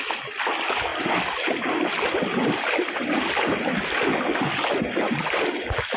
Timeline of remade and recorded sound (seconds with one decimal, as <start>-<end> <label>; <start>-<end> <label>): 0.0-6.0 recorded